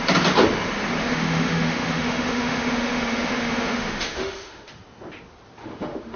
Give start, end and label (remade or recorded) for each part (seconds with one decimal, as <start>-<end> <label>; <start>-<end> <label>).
0.0-1.0 recorded; 1.0-4.7 remade; 4.7-5.6 recorded; 5.6-6.2 remade